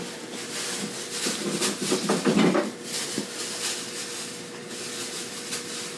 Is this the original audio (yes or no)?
yes